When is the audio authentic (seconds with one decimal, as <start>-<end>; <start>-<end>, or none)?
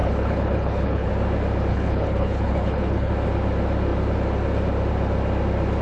1.1-1.7; 3.1-5.8